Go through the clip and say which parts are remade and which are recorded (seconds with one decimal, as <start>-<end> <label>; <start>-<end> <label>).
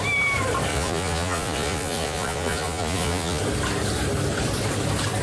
0.0-0.7 recorded; 0.7-3.4 remade; 3.4-5.2 recorded